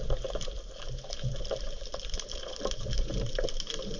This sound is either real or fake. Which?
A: fake